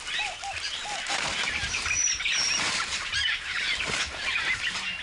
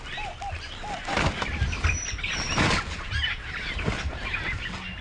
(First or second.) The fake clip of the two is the first